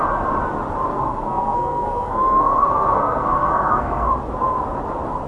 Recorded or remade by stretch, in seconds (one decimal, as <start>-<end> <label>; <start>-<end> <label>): 0.0-0.9 recorded; 0.9-4.1 remade; 4.1-5.3 recorded